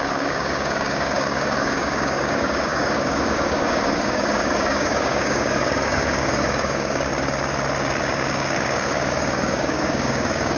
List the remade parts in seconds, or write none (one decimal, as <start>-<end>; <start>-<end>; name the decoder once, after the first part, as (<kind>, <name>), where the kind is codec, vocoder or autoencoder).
0.0-7.1 (codec, DAC); 8.0-10.6